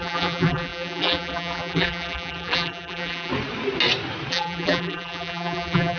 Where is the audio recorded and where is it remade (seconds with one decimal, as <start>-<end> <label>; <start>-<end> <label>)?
0.0-3.3 remade; 3.3-4.3 recorded; 4.3-6.0 remade